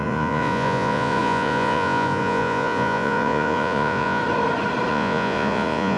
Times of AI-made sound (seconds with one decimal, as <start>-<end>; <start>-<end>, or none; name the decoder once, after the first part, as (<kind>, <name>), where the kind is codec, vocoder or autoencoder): 0.0-4.2 (vocoder, Vocos); 4.9-6.0